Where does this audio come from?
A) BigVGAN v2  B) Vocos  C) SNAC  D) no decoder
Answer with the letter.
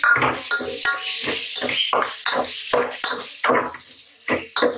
D